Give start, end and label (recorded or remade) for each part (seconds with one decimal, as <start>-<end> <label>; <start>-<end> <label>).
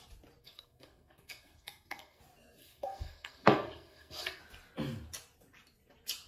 0.0-0.4 recorded; 0.4-2.2 remade; 2.2-2.6 recorded; 2.6-4.4 remade; 4.4-6.3 recorded